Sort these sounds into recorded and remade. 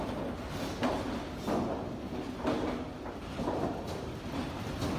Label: recorded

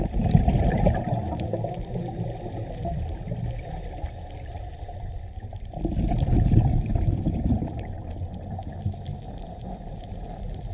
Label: recorded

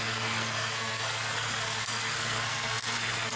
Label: remade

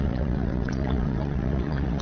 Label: remade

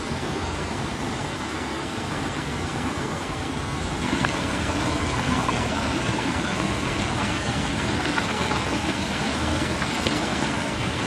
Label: remade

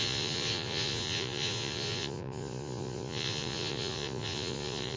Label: remade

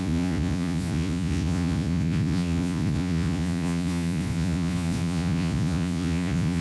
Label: remade